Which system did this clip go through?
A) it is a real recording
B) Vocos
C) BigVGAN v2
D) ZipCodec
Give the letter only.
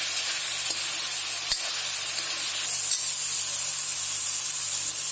A